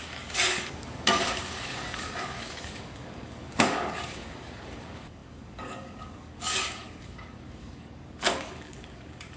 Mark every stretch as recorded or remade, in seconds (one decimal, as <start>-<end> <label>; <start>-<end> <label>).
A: 0.0-9.4 remade